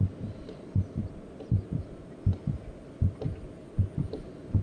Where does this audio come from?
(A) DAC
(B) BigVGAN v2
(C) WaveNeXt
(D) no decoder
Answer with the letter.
D